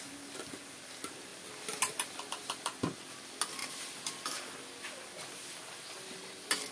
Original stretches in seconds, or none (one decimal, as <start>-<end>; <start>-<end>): 0.0-6.7